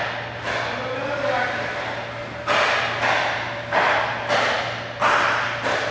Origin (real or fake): real